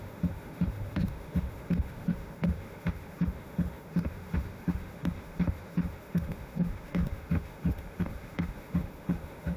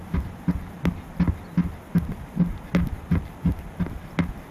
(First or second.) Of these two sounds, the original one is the second